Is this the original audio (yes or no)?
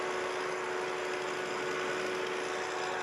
yes